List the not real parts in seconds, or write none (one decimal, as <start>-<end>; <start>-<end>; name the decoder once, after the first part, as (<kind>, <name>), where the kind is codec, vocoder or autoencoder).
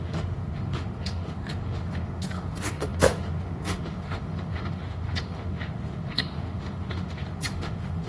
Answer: 0.0-8.1 (autoencoder, DAC-VAE)